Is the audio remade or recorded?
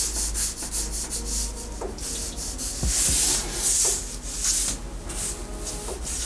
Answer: recorded